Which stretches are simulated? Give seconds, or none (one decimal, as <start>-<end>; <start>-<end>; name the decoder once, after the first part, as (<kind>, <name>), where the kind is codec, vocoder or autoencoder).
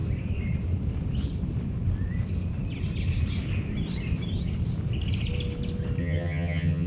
6.0-6.9 (vocoder, HiFi-GAN)